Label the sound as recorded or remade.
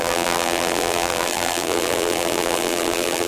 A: remade